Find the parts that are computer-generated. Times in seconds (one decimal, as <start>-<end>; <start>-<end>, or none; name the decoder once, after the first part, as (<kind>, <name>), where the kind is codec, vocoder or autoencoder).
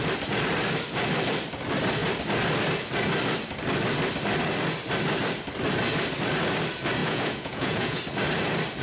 7.0-8.0 (vocoder, Vocos)